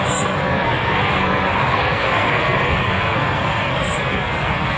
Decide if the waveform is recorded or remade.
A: remade